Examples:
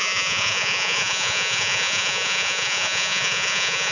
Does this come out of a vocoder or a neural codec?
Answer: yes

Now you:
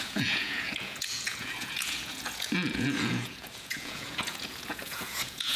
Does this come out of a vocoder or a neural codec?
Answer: yes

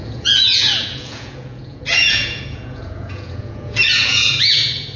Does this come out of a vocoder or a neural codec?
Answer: yes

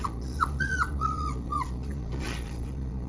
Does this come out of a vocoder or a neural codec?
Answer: yes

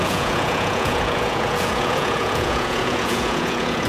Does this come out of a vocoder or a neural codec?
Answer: yes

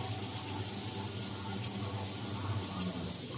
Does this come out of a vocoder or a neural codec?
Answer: no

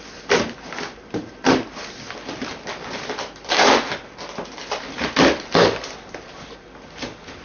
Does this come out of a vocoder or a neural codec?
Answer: no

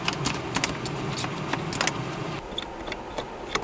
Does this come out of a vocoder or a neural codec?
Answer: no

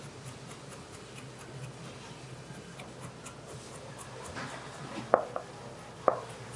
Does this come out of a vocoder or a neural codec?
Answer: no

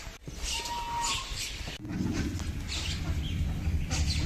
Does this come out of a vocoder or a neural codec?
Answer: no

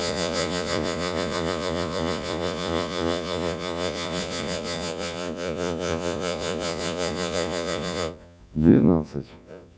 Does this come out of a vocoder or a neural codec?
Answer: yes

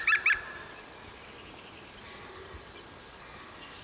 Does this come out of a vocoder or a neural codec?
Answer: no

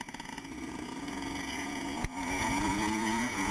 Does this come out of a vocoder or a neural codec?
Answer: yes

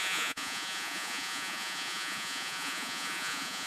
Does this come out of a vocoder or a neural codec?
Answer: yes